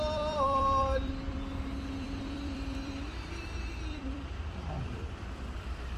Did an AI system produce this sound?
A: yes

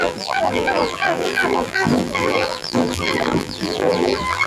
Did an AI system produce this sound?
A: yes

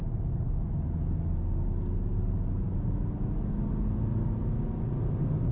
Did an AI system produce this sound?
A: no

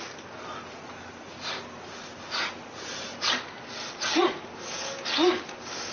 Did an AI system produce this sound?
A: no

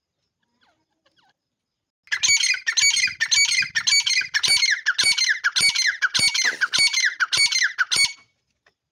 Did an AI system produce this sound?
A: no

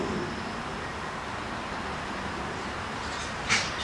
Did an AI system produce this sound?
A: no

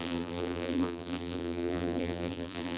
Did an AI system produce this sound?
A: yes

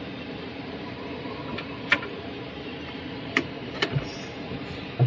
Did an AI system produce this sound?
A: yes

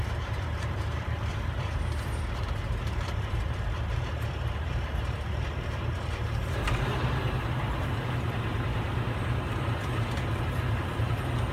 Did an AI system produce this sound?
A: yes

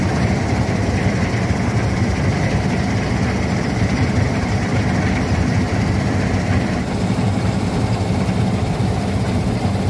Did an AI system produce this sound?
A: yes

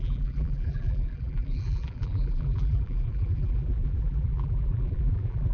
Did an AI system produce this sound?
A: yes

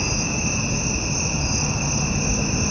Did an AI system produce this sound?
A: no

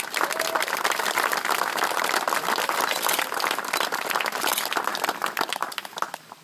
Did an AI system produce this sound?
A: no